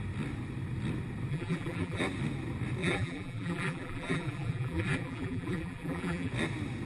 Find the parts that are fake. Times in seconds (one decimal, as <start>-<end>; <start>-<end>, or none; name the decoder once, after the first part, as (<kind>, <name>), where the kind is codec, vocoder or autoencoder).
1.3-2.0 (vocoder, BigVGAN v2); 2.8-6.3